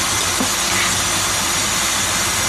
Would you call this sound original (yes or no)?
yes